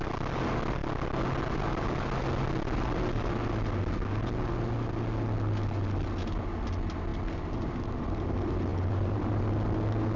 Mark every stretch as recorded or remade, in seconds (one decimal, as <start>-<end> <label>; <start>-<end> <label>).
0.0-8.7 recorded; 8.7-9.4 remade; 9.4-10.2 recorded